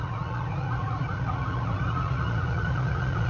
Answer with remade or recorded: remade